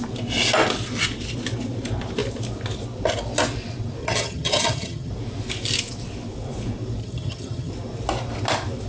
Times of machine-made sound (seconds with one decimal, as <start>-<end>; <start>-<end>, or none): 4.0-5.1; 7.0-7.7